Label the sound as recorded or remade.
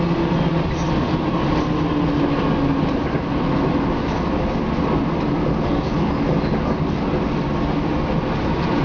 recorded